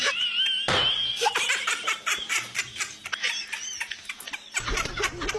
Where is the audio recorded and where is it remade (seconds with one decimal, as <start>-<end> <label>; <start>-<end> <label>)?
0.0-5.4 recorded